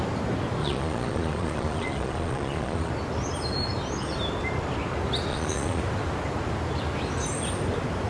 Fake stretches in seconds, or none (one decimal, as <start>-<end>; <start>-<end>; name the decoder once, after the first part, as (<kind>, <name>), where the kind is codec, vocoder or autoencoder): 0.6-2.9 (vocoder, Vocos); 5.3-5.8

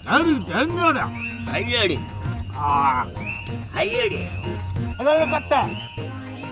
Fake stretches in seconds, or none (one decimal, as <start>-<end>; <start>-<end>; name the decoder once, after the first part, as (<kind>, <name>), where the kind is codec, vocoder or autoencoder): 0.0-1.5 (vocoder, Vocos); 2.0-6.5

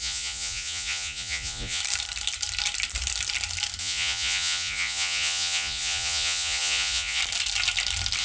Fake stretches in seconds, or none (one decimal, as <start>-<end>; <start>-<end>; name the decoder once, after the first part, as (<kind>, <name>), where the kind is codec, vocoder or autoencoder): 0.0-1.8 (vocoder, Vocos); 3.8-7.2

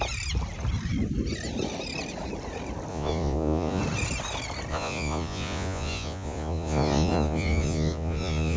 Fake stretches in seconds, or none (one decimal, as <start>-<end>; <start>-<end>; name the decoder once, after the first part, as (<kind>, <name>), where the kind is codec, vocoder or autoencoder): 2.9-3.8 (vocoder, Vocos); 4.7-8.6